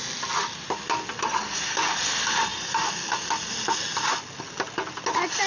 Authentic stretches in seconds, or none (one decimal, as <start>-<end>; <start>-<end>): 0.0-5.5